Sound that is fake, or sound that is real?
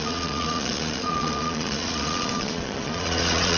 fake